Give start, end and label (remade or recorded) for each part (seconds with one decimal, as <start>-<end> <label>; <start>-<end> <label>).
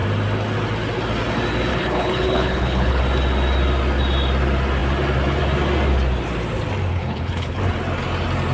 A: 0.0-1.7 recorded; 1.7-3.0 remade; 3.0-6.9 recorded; 6.9-7.6 remade; 7.6-8.5 recorded